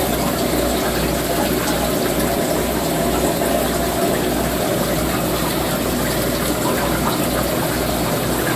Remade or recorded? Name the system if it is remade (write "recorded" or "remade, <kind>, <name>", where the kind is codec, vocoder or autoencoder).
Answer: recorded